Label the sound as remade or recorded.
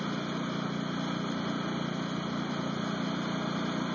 recorded